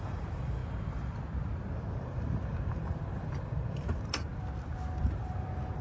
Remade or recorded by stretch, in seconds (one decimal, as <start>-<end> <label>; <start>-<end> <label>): 0.0-0.6 remade; 0.6-2.0 recorded; 2.0-4.3 remade; 4.3-5.0 recorded; 5.0-5.8 remade